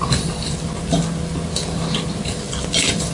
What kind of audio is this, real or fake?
real